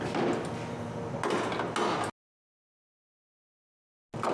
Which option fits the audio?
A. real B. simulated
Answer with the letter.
A